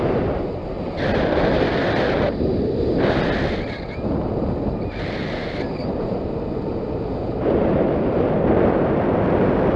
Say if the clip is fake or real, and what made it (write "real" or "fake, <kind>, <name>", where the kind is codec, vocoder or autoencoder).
real